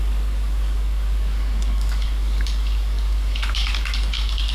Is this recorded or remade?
remade